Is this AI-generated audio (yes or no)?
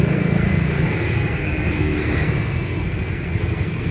yes